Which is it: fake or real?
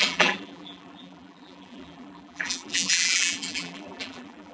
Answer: fake